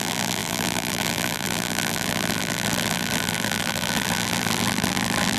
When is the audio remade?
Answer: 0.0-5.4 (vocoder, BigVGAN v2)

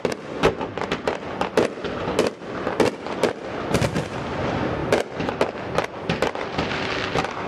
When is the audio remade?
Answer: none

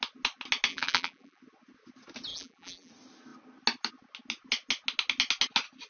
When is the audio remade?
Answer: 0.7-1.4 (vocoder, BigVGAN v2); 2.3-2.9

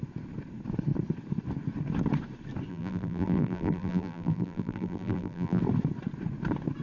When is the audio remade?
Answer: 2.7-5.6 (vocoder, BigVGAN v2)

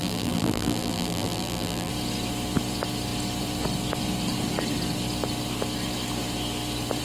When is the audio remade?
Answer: 0.0-1.9 (vocoder, BigVGAN v2)